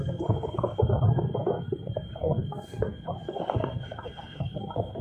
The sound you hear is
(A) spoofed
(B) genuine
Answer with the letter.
A